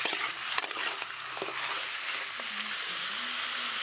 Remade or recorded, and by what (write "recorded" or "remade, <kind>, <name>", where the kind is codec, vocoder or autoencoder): recorded